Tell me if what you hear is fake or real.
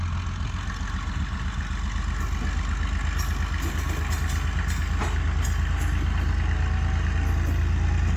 real